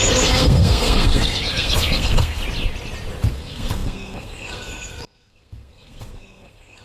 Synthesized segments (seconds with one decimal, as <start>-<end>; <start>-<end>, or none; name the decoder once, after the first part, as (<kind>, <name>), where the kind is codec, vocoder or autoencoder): 0.0-2.4 (codec, SNAC); 3.3-6.8